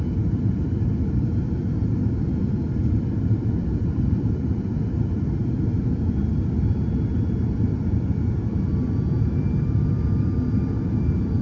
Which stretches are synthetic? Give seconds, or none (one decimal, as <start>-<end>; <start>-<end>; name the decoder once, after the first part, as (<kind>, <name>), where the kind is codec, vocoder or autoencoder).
0.0-1.8 (vocoder, BigVGAN v2); 2.4-5.7; 9.9-11.4